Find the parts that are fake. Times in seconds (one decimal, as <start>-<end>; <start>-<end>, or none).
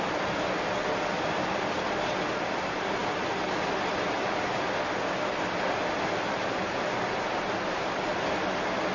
none